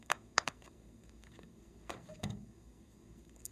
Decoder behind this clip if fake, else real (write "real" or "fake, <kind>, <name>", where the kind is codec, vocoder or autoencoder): fake, codec, SNAC